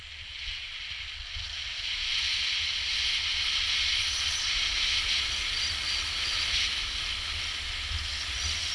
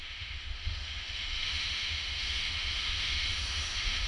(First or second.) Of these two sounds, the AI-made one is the second